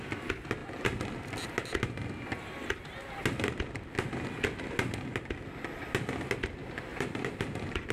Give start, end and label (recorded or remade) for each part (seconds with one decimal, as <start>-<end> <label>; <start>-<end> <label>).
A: 0.0-6.9 recorded; 6.9-7.9 remade